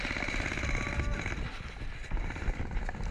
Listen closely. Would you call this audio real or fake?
real